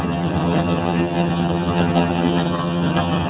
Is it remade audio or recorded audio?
remade